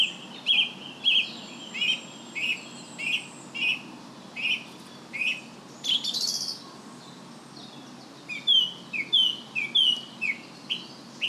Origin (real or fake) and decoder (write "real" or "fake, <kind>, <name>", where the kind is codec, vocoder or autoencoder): real